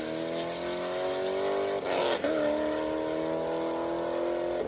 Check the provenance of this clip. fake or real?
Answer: real